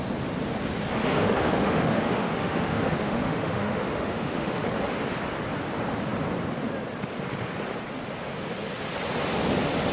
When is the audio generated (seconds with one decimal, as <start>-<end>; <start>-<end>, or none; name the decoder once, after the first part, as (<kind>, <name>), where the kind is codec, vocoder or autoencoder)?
1.0-4.6 (autoencoder, DAC-VAE)